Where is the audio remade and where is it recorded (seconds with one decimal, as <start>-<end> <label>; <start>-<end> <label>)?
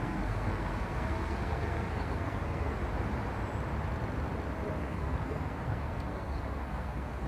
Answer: 0.0-2.8 remade; 2.8-4.8 recorded; 4.8-7.3 remade